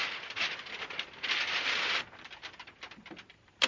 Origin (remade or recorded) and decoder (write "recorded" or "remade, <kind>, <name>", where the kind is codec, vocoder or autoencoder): recorded